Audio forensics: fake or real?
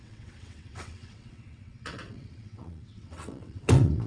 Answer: fake